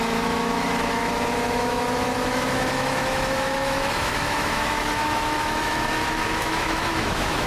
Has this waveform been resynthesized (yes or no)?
yes